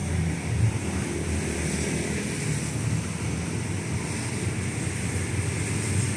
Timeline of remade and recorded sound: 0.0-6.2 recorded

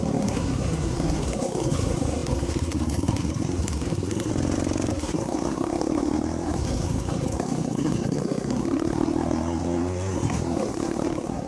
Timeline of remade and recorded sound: 0.0-4.3 remade; 4.3-4.9 recorded; 4.9-11.5 remade

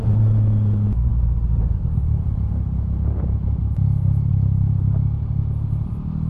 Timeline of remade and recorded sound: 0.0-6.3 recorded

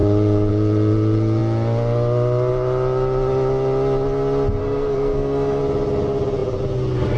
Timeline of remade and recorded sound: 0.0-4.6 recorded; 4.6-5.6 remade; 5.6-7.2 recorded

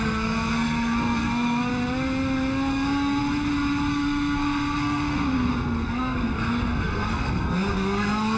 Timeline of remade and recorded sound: 0.0-1.7 remade; 1.7-2.7 recorded; 2.7-3.2 remade; 3.2-3.9 recorded; 3.9-8.4 remade